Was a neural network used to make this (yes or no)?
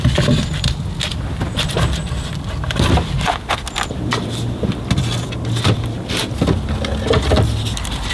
no